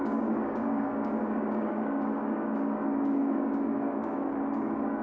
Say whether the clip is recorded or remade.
remade